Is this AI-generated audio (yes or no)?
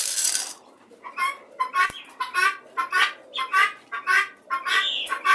no